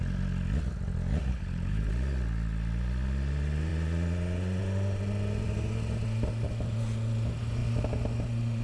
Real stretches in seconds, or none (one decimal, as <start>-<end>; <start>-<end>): 0.0-1.3; 1.9-8.6